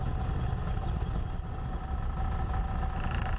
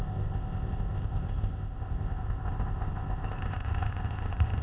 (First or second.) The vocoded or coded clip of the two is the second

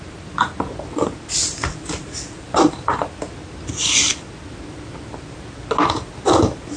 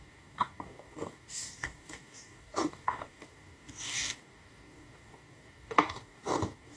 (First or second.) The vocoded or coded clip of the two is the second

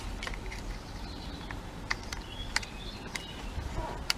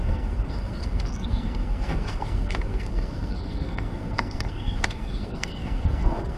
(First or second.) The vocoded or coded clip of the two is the second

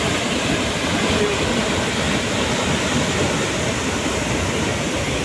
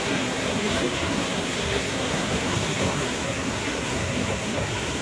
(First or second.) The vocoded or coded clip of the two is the second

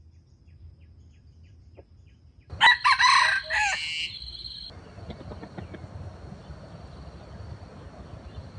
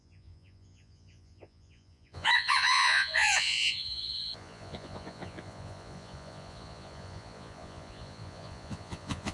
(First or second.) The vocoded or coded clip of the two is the second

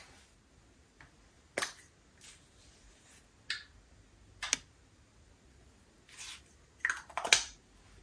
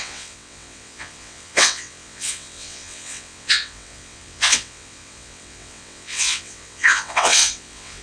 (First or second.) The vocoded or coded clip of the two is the second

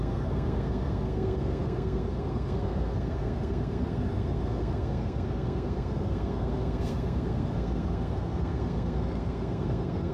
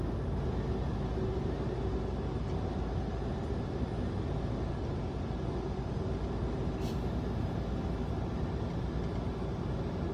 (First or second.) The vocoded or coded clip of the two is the first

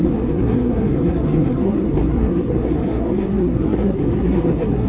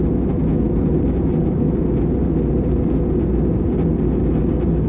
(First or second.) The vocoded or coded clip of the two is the first